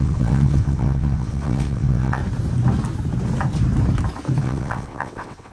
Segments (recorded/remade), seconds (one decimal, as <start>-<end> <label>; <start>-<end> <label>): 0.0-2.2 remade; 2.2-4.4 recorded; 4.4-5.5 remade